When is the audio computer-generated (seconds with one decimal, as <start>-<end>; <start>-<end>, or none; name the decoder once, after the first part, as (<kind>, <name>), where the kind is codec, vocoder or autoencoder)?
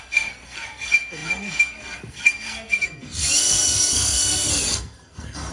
0.0-5.5 (codec, SNAC)